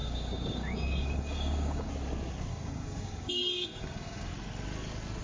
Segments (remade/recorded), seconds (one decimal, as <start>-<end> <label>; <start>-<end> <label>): 0.0-1.9 remade; 1.9-2.5 recorded; 2.5-4.3 remade; 4.3-5.2 recorded